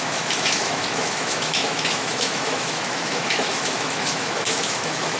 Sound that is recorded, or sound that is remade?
remade